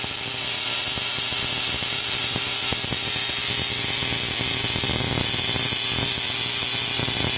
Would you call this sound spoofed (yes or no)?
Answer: no